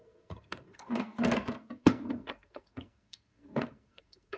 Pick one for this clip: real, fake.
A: fake